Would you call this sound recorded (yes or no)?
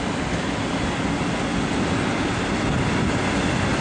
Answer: yes